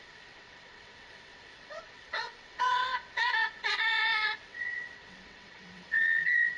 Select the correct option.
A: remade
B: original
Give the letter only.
A